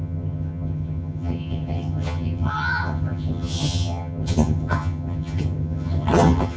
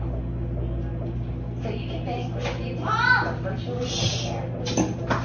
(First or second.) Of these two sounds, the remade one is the first